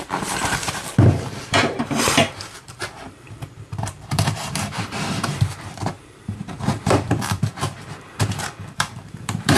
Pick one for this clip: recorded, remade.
remade